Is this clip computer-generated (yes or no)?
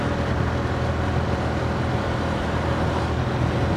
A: no